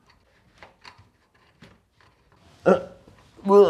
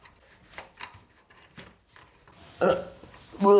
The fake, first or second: second